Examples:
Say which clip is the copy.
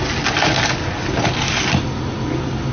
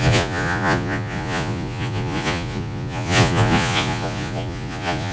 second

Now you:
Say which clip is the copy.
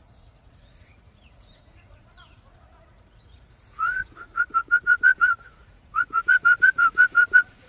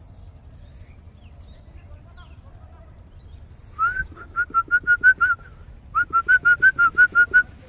first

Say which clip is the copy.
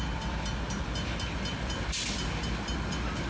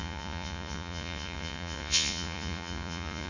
second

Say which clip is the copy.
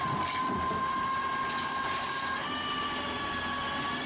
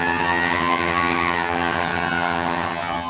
second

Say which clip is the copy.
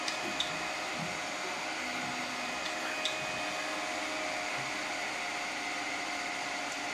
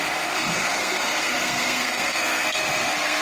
second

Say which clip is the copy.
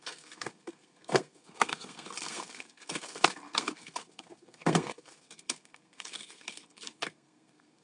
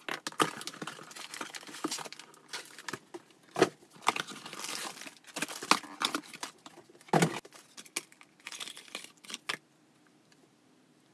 first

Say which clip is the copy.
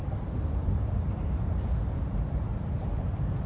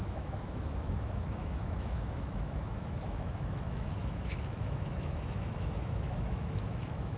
second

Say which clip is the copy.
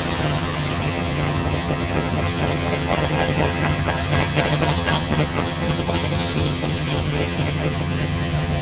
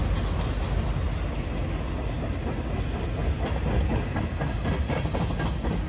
first